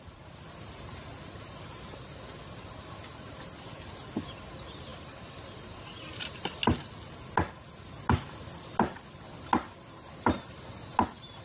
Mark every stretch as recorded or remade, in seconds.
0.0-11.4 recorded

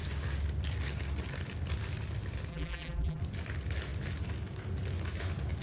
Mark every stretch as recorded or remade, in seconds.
0.0-2.5 recorded; 2.5-3.2 remade; 3.2-5.6 recorded

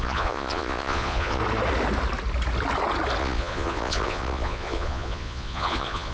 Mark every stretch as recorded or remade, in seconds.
0.0-1.4 remade; 1.4-3.2 recorded; 3.2-6.1 remade